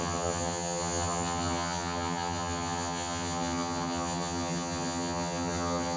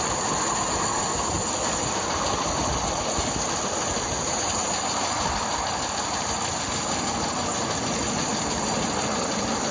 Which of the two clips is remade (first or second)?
first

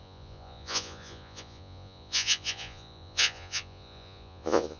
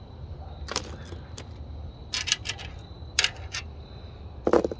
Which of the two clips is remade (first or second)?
first